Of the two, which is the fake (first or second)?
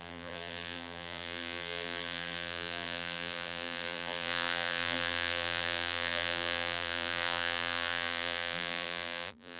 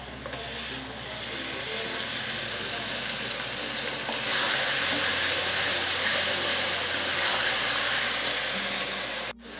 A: first